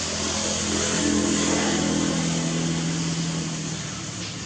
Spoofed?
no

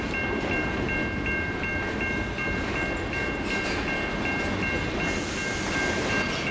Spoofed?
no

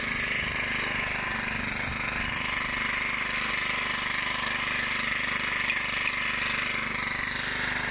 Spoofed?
no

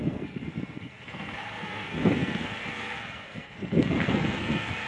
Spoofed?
yes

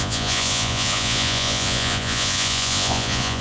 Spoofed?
yes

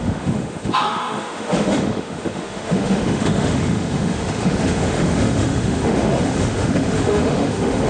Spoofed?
yes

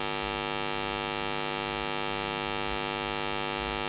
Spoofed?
no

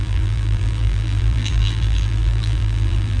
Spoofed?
yes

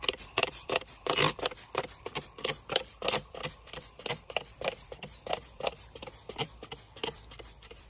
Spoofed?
yes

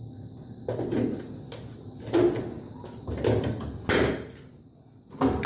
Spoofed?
no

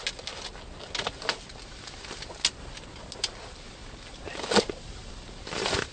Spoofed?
no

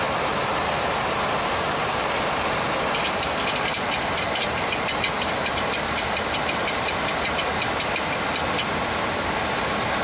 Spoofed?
no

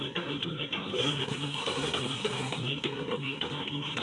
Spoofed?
yes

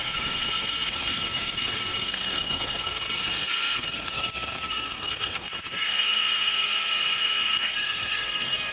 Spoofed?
yes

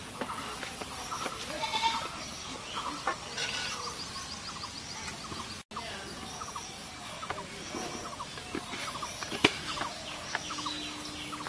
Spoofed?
no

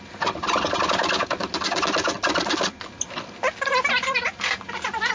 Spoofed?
no